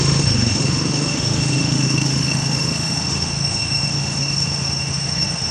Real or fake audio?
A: fake